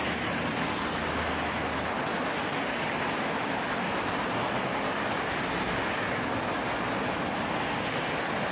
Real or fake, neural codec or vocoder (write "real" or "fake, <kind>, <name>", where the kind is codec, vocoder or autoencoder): real